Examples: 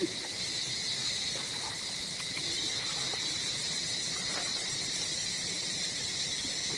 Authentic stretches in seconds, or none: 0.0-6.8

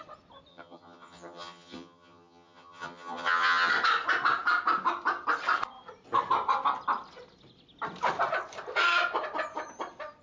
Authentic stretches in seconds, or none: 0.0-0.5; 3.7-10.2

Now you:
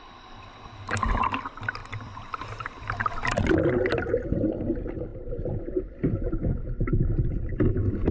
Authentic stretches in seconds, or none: 0.0-8.1

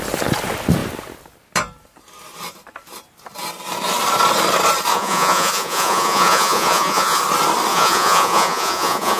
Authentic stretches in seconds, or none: 0.0-4.9; 7.2-7.7